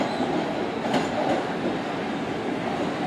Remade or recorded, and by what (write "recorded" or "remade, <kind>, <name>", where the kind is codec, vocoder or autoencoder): recorded